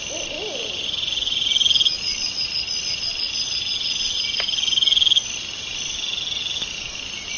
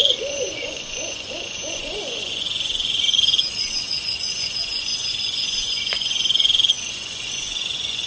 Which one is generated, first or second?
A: second